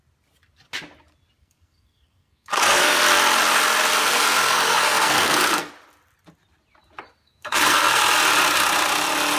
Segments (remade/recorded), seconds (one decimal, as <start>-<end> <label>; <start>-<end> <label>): 0.0-1.4 recorded; 1.4-3.0 remade; 3.0-4.0 recorded; 4.0-5.7 remade; 5.7-7.2 recorded; 7.2-8.0 remade; 8.0-9.4 recorded

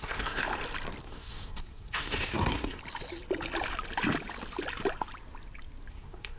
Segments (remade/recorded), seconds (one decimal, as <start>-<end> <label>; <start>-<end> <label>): 0.0-0.4 remade; 0.4-1.0 recorded; 1.0-2.8 remade; 2.8-5.9 recorded; 5.9-6.4 remade

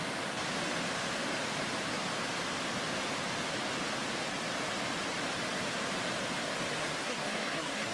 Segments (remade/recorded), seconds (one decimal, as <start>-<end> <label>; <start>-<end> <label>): 0.0-6.8 recorded; 6.8-7.9 remade

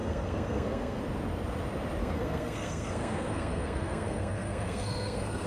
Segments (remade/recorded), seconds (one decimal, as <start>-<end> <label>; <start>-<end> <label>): 0.0-1.0 remade; 1.0-2.0 recorded; 2.0-5.5 remade